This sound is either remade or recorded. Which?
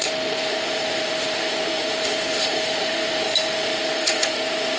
remade